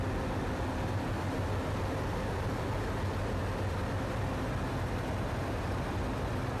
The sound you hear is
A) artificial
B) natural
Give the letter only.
B